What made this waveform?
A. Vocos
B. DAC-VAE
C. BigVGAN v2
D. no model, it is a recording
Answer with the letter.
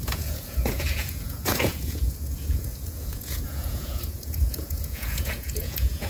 A